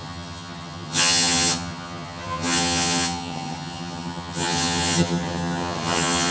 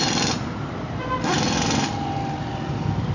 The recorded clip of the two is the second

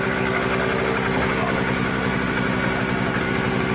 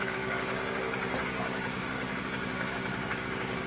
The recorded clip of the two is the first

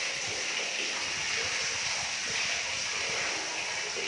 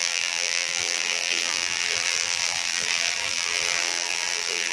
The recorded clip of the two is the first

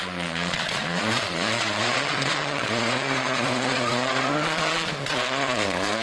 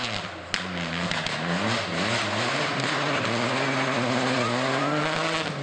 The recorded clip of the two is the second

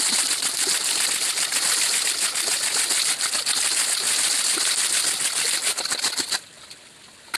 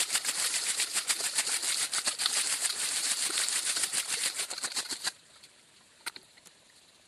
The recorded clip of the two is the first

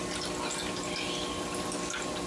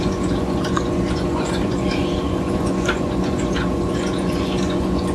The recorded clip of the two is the first